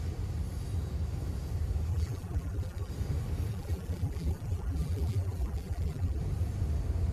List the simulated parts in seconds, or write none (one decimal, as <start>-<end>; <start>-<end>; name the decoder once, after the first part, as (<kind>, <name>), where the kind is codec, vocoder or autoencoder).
1.9-2.9 (vocoder, BigVGAN v2); 3.5-6.2